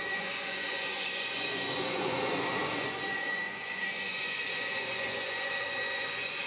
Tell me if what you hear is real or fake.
fake